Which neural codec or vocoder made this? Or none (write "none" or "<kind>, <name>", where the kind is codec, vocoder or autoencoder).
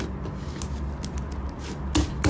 none